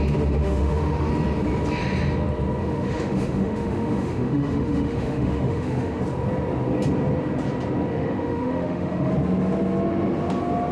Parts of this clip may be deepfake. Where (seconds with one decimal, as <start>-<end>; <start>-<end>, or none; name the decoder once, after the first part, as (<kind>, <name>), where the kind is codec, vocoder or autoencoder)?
0.4-1.1 (autoencoder, DAC-VAE); 2.6-6.0; 7.9-9.1